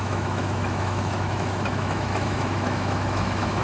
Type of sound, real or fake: fake